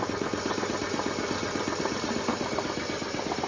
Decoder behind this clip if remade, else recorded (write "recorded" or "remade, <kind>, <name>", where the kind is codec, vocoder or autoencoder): recorded